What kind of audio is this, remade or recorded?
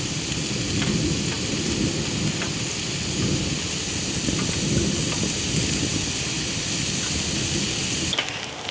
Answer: recorded